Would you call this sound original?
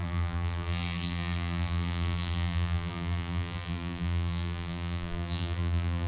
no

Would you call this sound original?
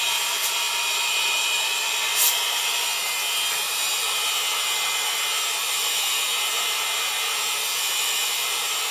yes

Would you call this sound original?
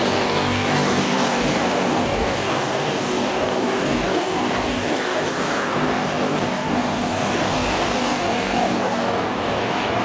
no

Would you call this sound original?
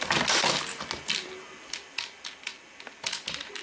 yes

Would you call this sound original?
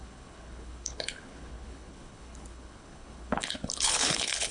no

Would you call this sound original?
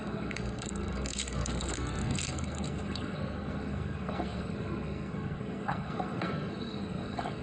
no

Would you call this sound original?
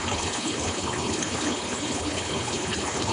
no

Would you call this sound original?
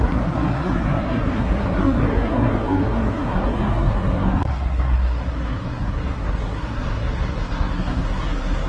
no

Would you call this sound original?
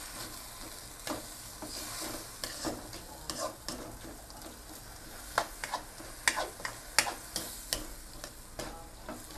yes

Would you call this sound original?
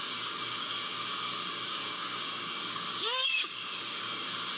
no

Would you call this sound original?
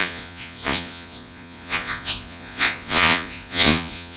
no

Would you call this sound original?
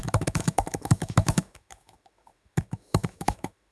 no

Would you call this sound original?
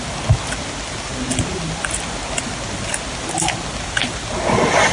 yes